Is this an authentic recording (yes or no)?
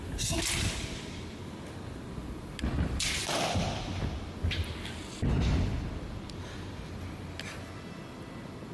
yes